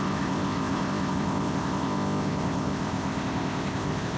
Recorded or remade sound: remade